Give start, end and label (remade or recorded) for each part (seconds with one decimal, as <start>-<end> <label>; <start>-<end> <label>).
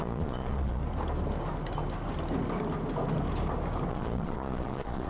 0.0-0.8 remade; 0.8-3.9 recorded; 3.9-5.1 remade